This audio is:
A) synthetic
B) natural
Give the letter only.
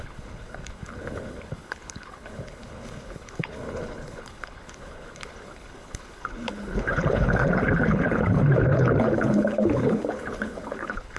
A